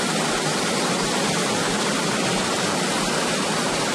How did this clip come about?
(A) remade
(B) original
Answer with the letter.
B